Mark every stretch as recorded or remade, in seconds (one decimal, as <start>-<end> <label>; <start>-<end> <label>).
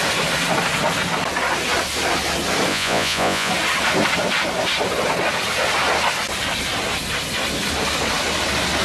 0.0-2.7 recorded; 2.7-3.5 remade; 3.5-8.8 recorded